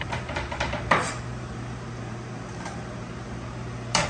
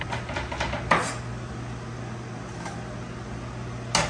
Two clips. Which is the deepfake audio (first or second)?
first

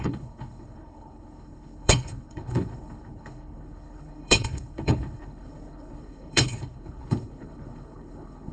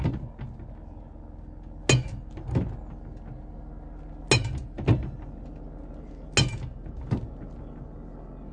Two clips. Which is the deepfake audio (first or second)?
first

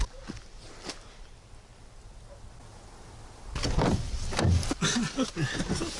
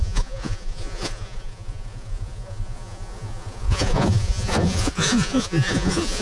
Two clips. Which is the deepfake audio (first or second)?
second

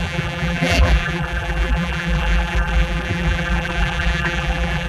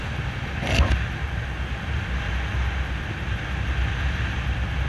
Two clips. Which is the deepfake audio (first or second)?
first